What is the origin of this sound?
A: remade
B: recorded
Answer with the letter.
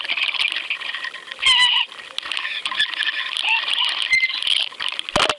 B